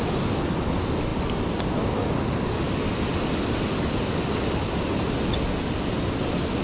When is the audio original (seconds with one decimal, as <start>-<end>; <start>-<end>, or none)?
0.0-6.6